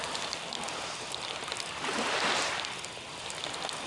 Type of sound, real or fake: real